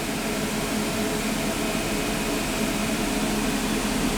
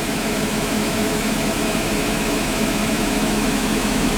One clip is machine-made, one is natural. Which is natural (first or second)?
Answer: first